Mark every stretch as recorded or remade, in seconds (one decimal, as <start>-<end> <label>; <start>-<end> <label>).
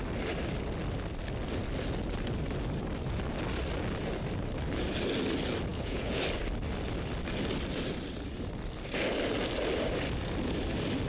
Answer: 0.0-5.7 recorded; 5.7-6.2 remade; 6.2-11.1 recorded